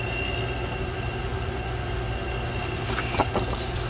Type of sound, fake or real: real